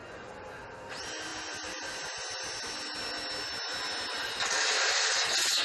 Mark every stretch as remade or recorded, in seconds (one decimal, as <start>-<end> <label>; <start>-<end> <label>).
0.0-0.6 remade; 0.6-5.6 recorded

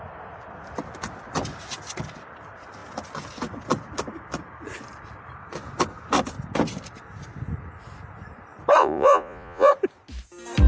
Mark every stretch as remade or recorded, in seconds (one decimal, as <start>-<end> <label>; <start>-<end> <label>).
0.0-8.8 recorded; 8.8-9.7 remade; 9.7-10.7 recorded

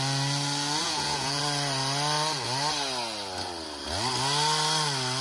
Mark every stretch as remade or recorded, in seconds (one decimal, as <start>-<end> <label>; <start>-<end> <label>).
0.0-0.8 recorded; 0.8-1.4 remade; 1.4-5.2 recorded

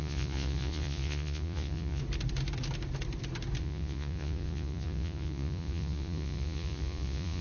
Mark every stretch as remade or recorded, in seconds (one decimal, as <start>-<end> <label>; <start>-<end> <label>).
0.0-2.0 remade; 2.0-3.6 recorded; 3.6-7.4 remade

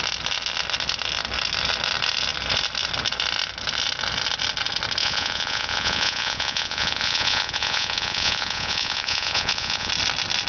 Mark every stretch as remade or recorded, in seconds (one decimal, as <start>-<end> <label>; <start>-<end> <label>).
0.0-5.0 recorded; 5.0-9.9 remade; 9.9-10.5 recorded

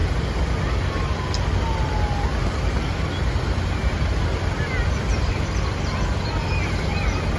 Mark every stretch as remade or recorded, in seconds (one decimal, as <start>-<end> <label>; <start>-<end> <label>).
0.0-7.4 recorded

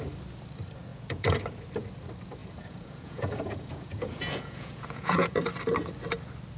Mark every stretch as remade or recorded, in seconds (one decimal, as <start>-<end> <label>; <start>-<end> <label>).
0.0-0.9 recorded; 0.9-1.4 remade; 1.4-2.4 recorded; 2.4-5.4 remade; 5.4-6.6 recorded